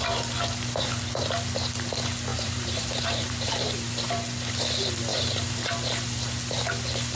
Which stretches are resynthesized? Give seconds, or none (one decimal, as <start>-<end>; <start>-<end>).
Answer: 2.3-4.5; 5.1-5.7